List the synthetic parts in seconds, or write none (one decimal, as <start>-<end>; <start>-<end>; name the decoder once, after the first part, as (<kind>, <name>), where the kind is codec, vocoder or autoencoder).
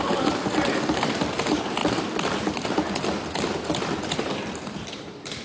0.0-1.8 (vocoder, BigVGAN v2); 5.0-5.4